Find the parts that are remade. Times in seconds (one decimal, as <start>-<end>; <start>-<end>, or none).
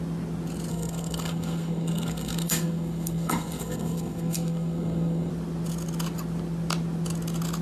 0.7-5.3